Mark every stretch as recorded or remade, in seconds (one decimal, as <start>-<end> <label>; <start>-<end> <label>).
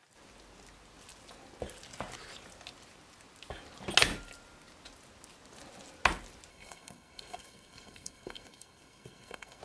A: 0.0-6.5 recorded; 6.5-9.6 remade